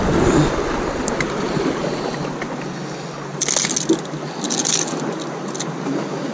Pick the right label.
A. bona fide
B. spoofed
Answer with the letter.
A